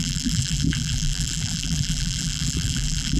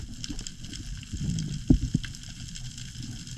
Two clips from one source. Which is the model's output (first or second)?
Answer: first